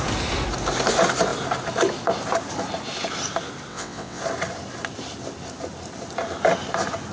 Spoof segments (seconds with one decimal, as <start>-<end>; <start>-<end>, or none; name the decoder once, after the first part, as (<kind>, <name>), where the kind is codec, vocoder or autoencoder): 3.7-4.2 (vocoder, WaveNeXt)